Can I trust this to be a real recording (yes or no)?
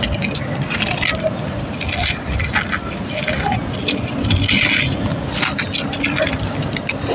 yes